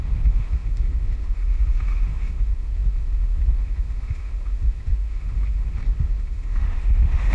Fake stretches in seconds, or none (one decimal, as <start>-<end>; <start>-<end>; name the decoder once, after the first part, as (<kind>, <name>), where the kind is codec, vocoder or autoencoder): 0.0-7.3 (autoencoder, DAC-VAE)